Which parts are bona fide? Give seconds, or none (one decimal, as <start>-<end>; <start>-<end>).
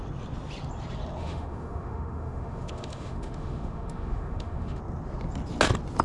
0.0-1.2; 4.8-6.0